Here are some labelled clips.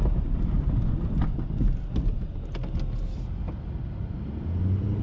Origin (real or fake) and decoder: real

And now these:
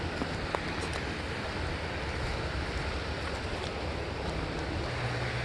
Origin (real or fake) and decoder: real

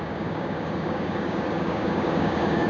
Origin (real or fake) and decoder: fake, codec, DAC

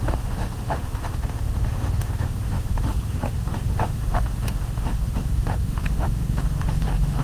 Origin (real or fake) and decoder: fake, autoencoder, DAC-VAE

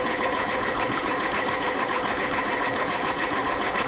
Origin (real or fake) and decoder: fake, codec, HILCodec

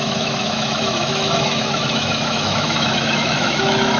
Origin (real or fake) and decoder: fake, autoencoder, DAC-VAE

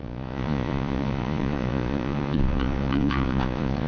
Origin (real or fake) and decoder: fake, vocoder, Vocos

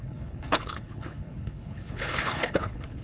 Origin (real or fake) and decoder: fake, codec, HILCodec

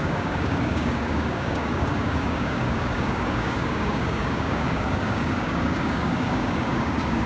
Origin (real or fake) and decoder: fake, codec, DAC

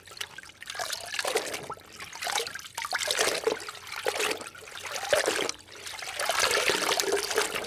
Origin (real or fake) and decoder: real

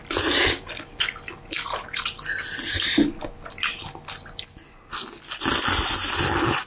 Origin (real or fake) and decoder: real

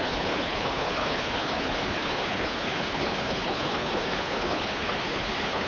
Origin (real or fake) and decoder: fake, codec, HILCodec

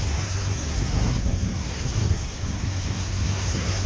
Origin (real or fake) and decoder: fake, codec, SNAC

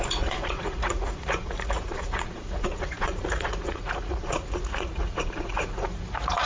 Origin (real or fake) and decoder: fake, vocoder, Vocos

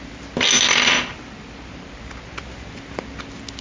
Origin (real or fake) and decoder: real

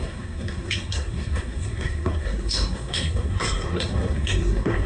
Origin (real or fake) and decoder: fake, codec, SNAC